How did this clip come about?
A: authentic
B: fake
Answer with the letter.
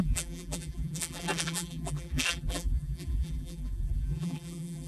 B